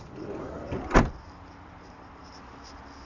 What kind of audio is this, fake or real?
real